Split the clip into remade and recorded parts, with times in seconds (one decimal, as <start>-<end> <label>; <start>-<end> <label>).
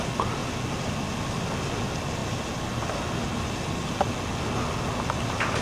0.0-5.6 recorded